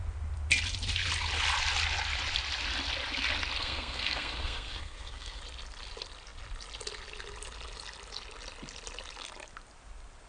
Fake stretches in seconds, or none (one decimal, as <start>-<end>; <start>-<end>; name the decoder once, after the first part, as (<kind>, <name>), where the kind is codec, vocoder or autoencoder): 3.6-5.4 (codec, SNAC)